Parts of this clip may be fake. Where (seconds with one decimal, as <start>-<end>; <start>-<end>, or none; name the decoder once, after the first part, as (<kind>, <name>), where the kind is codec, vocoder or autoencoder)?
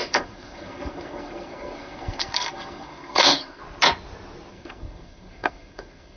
0.0-3.6 (codec, SNAC); 4.5-6.2